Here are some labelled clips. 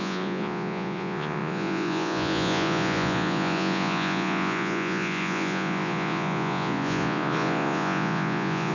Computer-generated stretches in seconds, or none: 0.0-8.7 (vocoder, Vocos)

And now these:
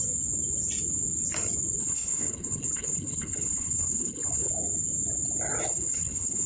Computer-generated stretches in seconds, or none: 1.8-4.5 (codec, HILCodec); 5.6-6.5